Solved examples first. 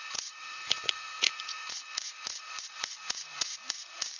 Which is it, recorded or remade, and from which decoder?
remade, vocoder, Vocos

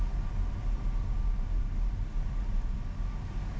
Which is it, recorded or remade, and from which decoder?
recorded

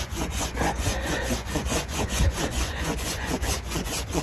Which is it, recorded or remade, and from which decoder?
remade, vocoder, Vocos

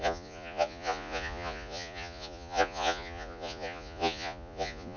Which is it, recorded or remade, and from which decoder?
remade, vocoder, Vocos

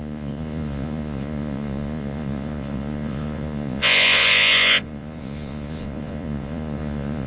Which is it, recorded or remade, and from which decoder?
remade, vocoder, Vocos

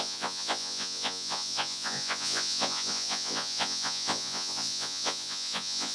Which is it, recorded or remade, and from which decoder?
remade, vocoder, Vocos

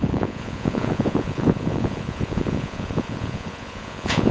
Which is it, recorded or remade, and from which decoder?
remade, vocoder, Vocos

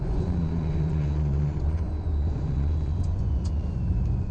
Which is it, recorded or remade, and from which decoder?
remade, vocoder, Vocos